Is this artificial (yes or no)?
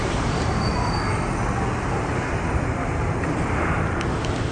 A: no